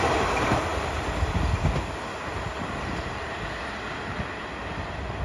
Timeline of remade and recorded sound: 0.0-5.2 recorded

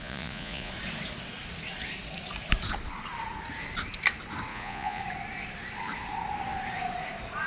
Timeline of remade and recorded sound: 0.0-0.7 remade; 0.7-4.5 recorded; 4.5-5.0 remade; 5.0-7.5 recorded

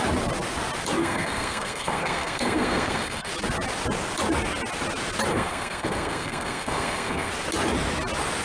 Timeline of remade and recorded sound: 0.0-1.0 recorded; 1.0-3.3 remade; 3.3-5.3 recorded; 5.3-7.3 remade; 7.3-8.4 recorded

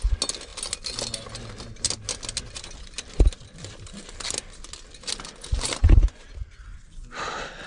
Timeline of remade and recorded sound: 0.0-5.8 recorded; 5.8-6.3 remade; 6.3-7.7 recorded

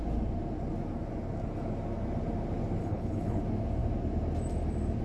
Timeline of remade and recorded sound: 0.0-2.8 recorded; 2.8-3.4 remade; 3.4-5.0 recorded